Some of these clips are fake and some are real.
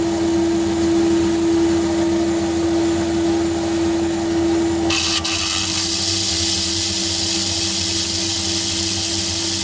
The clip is real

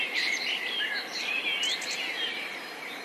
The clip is real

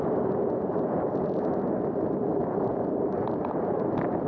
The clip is real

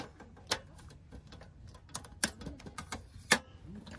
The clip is real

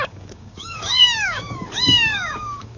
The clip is fake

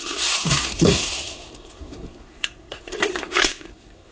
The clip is fake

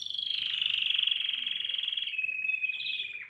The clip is fake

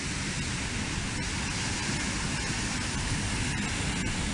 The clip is real